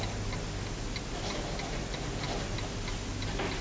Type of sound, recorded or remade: recorded